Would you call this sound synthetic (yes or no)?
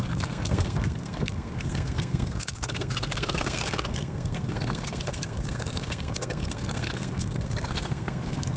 yes